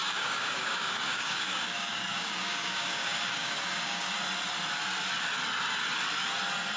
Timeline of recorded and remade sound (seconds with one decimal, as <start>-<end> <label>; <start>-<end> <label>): 0.0-4.1 remade; 4.1-6.8 recorded